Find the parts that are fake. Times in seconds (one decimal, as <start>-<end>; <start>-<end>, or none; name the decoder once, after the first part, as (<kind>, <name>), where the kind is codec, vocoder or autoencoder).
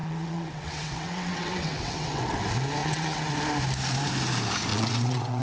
0.0-2.4 (vocoder, WaveNeXt); 2.8-3.3; 4.7-5.4